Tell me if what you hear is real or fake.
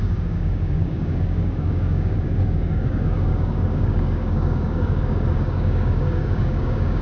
fake